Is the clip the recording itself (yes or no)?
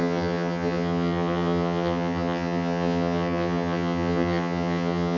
no